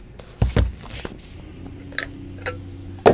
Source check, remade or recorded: recorded